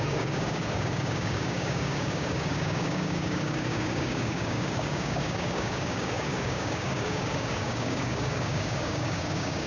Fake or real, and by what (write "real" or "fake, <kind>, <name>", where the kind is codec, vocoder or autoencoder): fake, codec, DAC